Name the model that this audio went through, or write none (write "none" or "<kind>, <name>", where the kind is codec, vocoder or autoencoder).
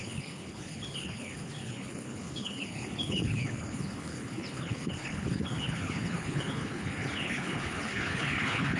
codec, HILCodec